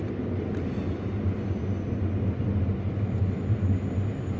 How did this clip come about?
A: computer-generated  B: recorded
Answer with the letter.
B